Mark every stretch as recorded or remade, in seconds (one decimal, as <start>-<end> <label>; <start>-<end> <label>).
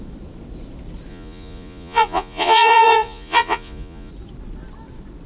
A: 0.0-1.1 recorded; 1.1-4.1 remade; 4.1-5.3 recorded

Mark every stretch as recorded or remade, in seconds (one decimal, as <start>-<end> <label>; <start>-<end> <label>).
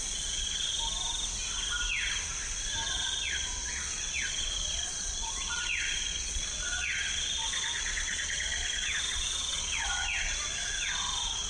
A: 0.0-0.7 remade; 0.7-2.9 recorded; 2.9-11.5 remade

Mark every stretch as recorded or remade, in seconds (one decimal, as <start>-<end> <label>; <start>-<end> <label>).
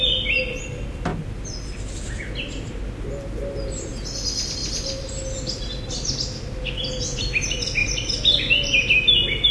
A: 0.0-9.5 recorded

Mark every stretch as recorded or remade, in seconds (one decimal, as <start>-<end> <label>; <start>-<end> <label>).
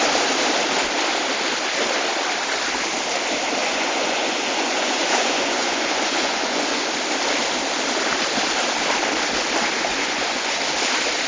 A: 0.0-3.6 recorded; 3.6-6.9 remade; 6.9-9.9 recorded; 9.9-10.6 remade; 10.6-11.3 recorded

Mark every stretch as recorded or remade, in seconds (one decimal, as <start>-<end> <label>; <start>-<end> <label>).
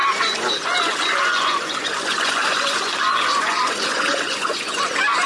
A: 0.0-5.3 remade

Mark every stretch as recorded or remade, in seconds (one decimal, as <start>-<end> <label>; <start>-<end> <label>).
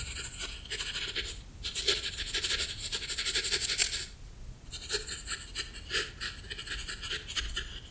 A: 0.0-3.8 recorded; 3.8-4.7 remade; 4.7-7.9 recorded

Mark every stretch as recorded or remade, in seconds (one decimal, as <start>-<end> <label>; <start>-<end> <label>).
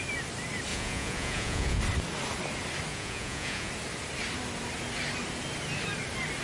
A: 0.0-0.7 recorded; 0.7-1.8 remade; 1.8-2.9 recorded; 2.9-3.7 remade; 3.7-6.4 recorded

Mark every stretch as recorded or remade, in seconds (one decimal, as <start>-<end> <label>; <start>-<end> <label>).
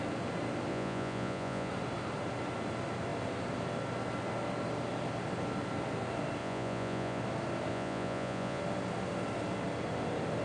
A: 0.0-0.7 recorded; 0.7-1.7 remade; 1.7-6.4 recorded; 6.4-7.2 remade; 7.2-7.7 recorded; 7.7-8.6 remade; 8.6-10.4 recorded